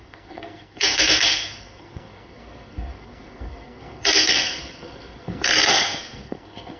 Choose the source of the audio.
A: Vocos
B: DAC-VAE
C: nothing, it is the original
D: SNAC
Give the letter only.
D